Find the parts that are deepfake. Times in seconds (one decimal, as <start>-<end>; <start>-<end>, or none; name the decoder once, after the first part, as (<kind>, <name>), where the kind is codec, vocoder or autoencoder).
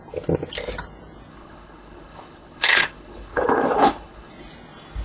1.3-4.3 (codec, HILCodec)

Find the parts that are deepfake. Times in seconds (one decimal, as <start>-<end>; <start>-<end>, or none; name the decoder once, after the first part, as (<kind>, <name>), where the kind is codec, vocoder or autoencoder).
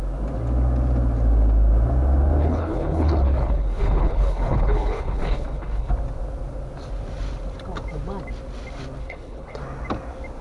2.4-5.9 (codec, HILCodec); 9.0-9.6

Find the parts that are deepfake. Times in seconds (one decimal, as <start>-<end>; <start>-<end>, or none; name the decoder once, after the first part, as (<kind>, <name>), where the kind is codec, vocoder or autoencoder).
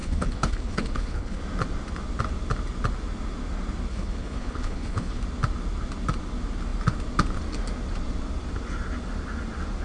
0.0-1.4 (codec, HILCodec); 3.9-5.2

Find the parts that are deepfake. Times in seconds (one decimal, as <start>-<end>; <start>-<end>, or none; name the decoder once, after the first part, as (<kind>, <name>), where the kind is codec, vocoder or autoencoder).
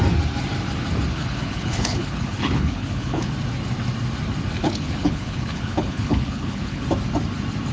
1.1-3.3 (codec, HILCodec); 4.6-6.8